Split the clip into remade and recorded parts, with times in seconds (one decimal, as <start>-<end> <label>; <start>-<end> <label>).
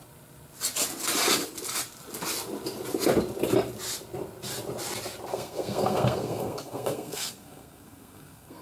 0.0-5.3 recorded; 5.3-8.6 remade